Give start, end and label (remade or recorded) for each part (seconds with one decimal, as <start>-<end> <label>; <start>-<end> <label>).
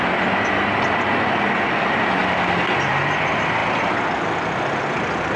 0.0-5.4 recorded